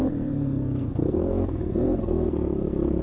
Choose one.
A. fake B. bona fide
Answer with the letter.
A